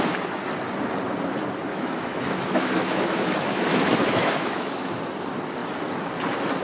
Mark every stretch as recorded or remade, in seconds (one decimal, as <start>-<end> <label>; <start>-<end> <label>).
0.0-1.7 recorded; 1.7-5.0 remade; 5.0-6.6 recorded